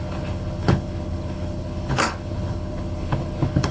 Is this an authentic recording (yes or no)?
no